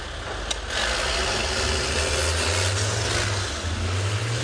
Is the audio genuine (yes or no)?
yes